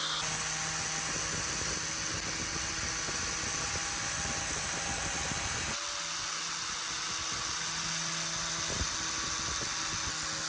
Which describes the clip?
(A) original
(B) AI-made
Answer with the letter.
A